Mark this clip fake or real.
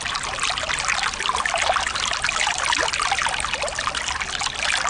real